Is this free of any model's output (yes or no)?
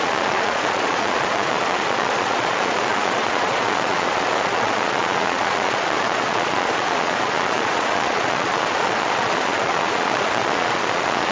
no